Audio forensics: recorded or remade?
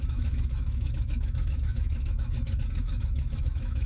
remade